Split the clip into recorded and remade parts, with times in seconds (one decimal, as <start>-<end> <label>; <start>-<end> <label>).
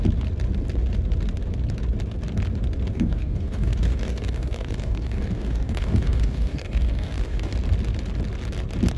0.0-2.9 recorded; 2.9-7.5 remade; 7.5-9.0 recorded